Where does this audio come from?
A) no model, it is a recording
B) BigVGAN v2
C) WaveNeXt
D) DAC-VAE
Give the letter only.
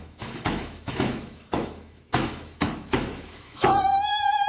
D